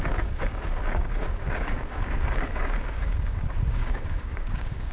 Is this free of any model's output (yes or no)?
no